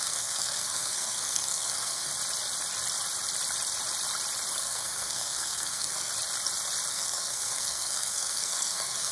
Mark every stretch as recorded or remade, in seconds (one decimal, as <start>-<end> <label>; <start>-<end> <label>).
0.0-2.1 remade; 2.1-4.6 recorded; 4.6-6.1 remade; 6.1-6.9 recorded; 6.9-9.1 remade